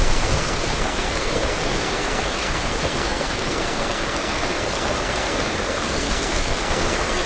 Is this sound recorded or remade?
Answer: remade